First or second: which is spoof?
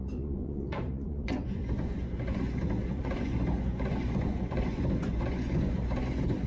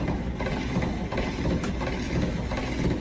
first